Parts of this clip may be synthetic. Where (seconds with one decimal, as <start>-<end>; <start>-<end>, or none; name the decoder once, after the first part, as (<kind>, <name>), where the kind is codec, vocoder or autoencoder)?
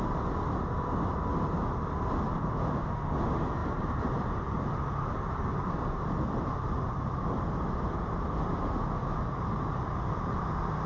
3.6-7.2 (vocoder, BigVGAN v2)